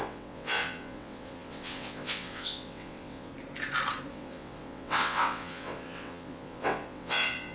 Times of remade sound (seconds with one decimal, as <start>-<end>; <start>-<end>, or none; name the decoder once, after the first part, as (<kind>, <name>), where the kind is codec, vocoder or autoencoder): 0.0-3.3 (vocoder, WaveNeXt); 4.1-7.5